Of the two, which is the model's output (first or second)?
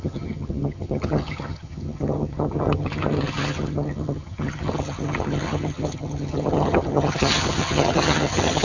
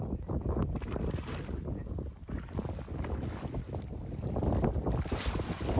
first